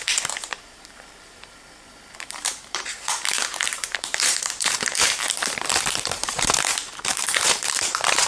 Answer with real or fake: fake